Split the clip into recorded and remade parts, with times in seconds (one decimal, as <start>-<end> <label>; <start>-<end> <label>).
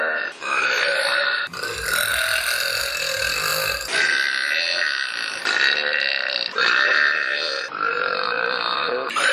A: 0.0-7.9 recorded; 7.9-9.3 remade